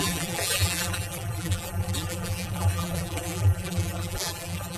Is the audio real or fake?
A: fake